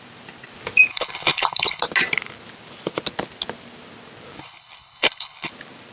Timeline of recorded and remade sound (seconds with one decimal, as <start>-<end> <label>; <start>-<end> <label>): 0.0-0.9 recorded; 0.9-1.8 remade; 1.8-4.4 recorded; 4.4-5.5 remade; 5.5-5.9 recorded